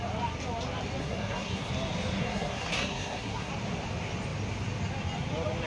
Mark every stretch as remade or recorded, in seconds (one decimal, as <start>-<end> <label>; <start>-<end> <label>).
0.0-1.0 recorded; 1.0-1.7 remade; 1.7-2.2 recorded; 2.2-3.5 remade; 3.5-5.7 recorded